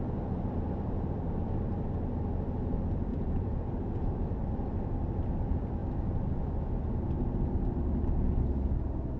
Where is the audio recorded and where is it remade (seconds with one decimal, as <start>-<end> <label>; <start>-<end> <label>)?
0.0-3.1 recorded; 3.1-3.7 remade; 3.7-9.2 recorded

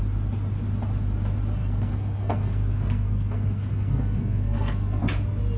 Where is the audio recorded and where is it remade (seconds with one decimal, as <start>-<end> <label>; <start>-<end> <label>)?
0.0-1.6 recorded; 1.6-5.0 remade; 5.0-5.6 recorded

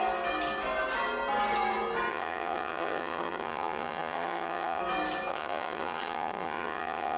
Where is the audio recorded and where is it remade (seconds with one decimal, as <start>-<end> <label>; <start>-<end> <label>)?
0.0-2.1 recorded; 2.1-4.8 remade; 4.8-5.3 recorded; 5.3-7.2 remade

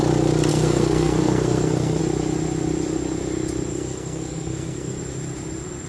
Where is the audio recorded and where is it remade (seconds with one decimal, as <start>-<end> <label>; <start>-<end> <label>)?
0.0-0.5 recorded; 0.5-2.0 remade; 2.0-3.7 recorded; 3.7-5.0 remade; 5.0-5.9 recorded

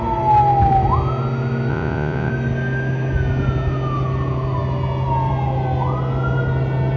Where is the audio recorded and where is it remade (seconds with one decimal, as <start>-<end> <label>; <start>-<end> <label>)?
0.0-1.7 recorded; 1.7-2.3 remade; 2.3-7.0 recorded

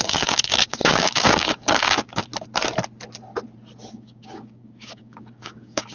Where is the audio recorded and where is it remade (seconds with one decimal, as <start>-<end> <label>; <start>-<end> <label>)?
0.0-2.3 remade; 2.3-3.9 recorded; 3.9-5.9 remade